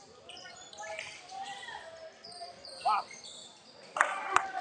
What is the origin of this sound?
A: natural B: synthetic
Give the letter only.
B